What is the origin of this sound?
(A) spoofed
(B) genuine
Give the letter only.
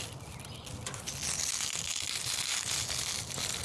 B